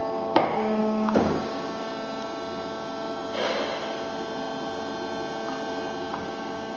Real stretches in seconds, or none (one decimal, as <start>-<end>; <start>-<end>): 1.9-6.0